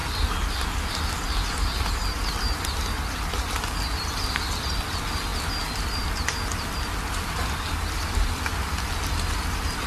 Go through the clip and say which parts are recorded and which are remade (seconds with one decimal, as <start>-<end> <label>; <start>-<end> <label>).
0.0-9.9 recorded